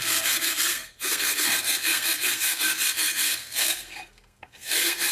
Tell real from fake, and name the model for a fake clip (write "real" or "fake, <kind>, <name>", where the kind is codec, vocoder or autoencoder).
fake, codec, SNAC